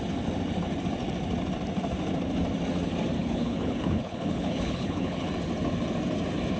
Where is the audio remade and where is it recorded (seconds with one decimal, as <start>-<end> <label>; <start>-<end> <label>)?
0.0-3.2 recorded; 3.2-5.3 remade; 5.3-6.6 recorded

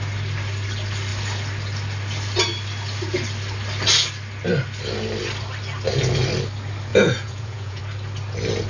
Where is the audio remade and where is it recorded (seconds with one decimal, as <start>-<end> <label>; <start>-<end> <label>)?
0.0-6.9 recorded; 6.9-7.8 remade; 7.8-8.7 recorded

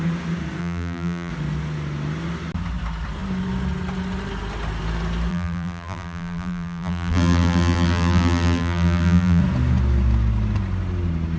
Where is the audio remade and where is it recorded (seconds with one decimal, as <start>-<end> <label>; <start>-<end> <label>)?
0.0-0.6 recorded; 0.6-1.3 remade; 1.3-5.3 recorded; 5.3-9.4 remade; 9.4-11.4 recorded

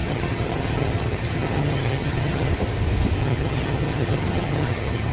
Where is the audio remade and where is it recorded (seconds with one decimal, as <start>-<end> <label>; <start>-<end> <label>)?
0.0-2.5 remade; 2.5-3.2 recorded; 3.2-5.1 remade

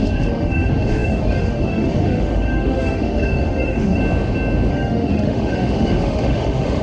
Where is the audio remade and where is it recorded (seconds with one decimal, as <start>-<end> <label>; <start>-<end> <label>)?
0.0-4.0 remade; 4.0-4.7 recorded; 4.7-6.8 remade

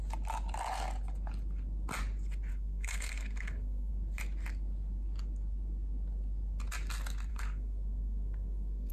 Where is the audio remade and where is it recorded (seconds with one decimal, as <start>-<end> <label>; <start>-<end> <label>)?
0.0-2.5 recorded; 2.5-3.9 remade; 3.9-7.3 recorded; 7.3-8.9 remade

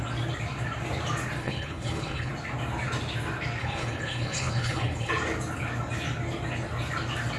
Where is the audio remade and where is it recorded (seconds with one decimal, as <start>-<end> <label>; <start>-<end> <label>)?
0.0-1.4 recorded; 1.4-2.3 remade; 2.3-3.6 recorded; 3.6-5.1 remade; 5.1-7.4 recorded